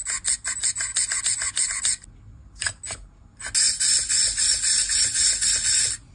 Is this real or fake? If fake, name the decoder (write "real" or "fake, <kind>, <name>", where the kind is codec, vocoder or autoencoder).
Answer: real